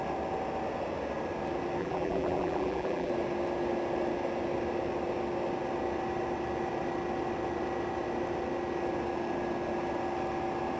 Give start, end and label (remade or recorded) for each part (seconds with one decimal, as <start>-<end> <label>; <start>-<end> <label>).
0.0-1.8 recorded; 1.8-3.1 remade; 3.1-10.8 recorded